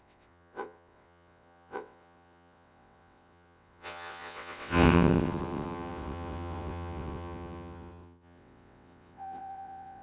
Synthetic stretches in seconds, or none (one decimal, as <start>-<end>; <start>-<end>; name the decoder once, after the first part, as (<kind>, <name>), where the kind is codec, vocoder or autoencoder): 0.0-10.0 (vocoder, WaveNeXt)

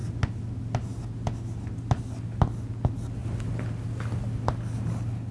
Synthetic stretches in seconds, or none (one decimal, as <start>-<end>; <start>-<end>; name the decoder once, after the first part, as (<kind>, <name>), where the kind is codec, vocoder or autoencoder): none

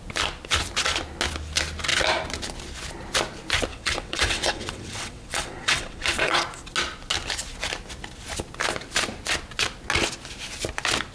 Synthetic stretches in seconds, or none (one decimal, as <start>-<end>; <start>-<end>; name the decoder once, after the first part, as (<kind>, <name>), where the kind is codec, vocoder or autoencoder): 3.7-6.4 (vocoder, WaveNeXt)